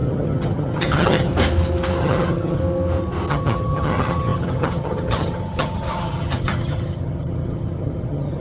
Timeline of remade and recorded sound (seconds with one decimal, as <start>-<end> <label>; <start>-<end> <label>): 0.0-1.3 remade; 1.3-2.0 recorded; 2.0-2.6 remade; 2.6-3.3 recorded; 3.3-8.4 remade